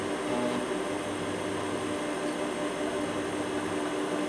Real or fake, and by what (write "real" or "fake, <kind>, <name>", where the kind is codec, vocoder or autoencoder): real